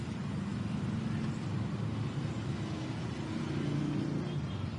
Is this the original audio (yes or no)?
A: yes